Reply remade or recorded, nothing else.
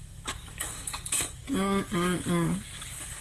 remade